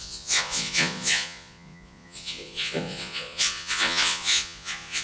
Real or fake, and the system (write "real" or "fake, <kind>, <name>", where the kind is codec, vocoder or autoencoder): fake, vocoder, Vocos